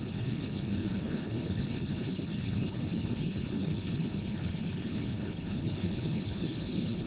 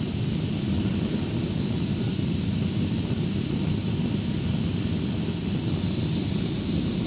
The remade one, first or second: first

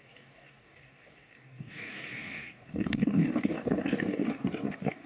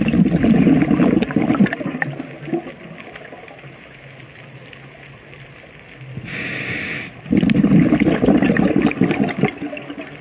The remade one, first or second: first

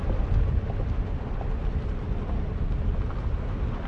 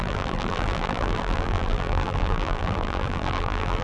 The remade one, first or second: second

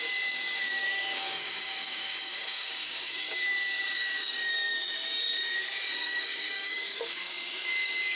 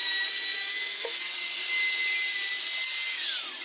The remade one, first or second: first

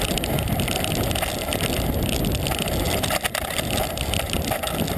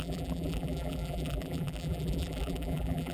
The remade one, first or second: second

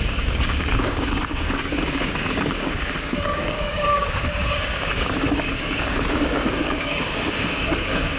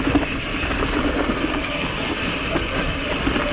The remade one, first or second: first